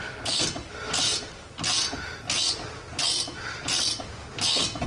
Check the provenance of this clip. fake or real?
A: real